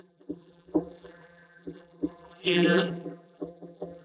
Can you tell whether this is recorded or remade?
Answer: remade